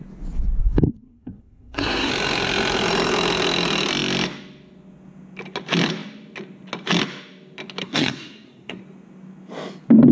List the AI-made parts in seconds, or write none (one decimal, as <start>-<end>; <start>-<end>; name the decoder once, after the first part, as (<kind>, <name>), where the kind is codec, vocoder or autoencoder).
0.6-2.1 (codec, SNAC); 7.8-8.8